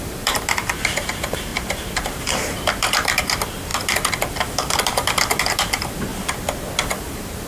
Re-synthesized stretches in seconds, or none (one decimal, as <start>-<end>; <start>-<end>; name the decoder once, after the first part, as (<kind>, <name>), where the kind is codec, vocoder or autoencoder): 0.0-6.1 (vocoder, BigVGAN v2); 6.9-7.5